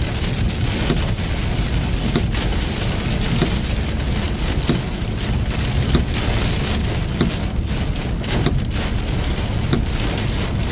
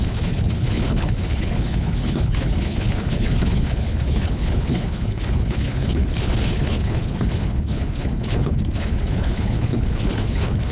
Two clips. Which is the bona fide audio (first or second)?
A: first